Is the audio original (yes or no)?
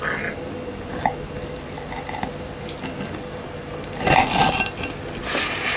yes